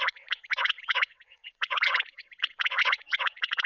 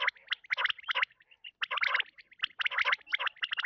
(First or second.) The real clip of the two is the second